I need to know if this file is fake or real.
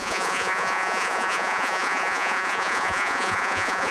fake